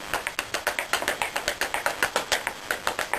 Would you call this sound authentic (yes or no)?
yes